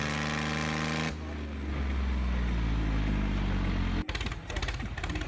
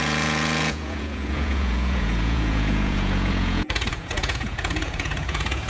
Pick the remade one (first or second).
second